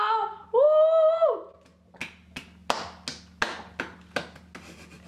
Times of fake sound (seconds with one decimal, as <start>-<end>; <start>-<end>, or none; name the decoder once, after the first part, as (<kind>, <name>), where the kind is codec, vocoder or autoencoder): none